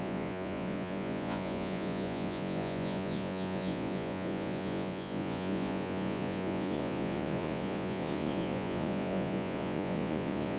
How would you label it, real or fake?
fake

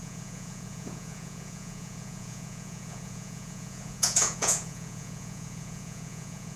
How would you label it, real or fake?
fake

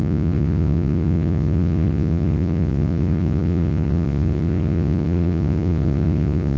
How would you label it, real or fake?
fake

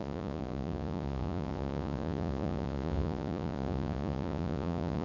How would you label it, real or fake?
fake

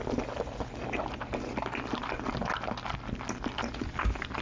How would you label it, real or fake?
real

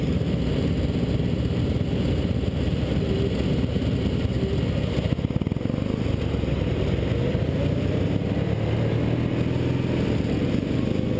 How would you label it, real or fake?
real